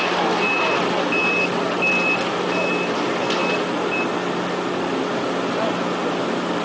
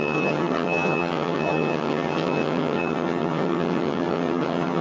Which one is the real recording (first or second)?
first